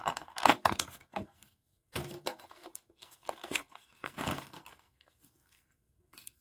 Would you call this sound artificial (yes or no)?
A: yes